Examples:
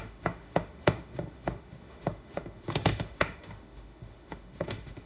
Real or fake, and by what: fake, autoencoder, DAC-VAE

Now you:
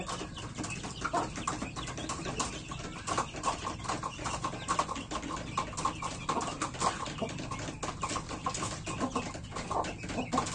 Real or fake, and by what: real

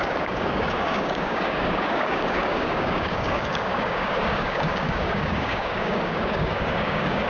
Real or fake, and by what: fake, codec, DAC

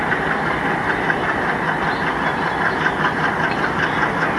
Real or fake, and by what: real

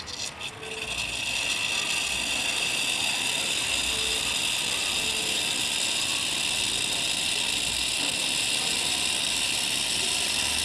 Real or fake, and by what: real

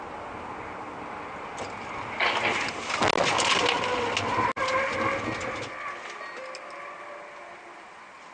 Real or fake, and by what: real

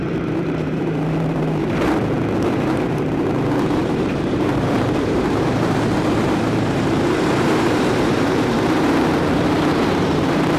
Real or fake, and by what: fake, vocoder, BigVGAN v2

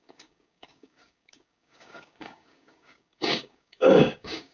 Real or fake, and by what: fake, codec, DAC